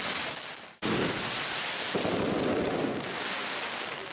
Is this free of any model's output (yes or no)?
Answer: yes